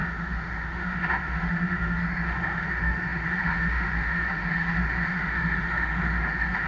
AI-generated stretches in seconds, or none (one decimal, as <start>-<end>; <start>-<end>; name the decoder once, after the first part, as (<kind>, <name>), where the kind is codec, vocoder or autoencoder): 0.0-6.7 (autoencoder, DAC-VAE)